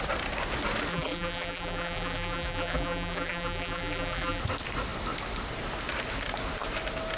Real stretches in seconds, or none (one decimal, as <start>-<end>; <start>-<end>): 0.0-0.9; 4.4-7.2